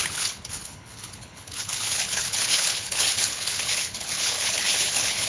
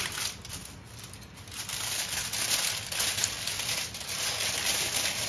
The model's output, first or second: first